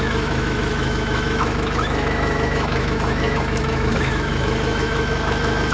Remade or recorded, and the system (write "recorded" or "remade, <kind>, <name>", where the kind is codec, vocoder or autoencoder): remade, autoencoder, DAC-VAE